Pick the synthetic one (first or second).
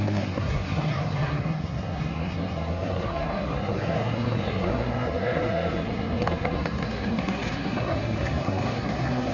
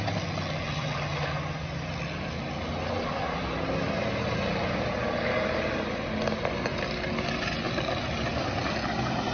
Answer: first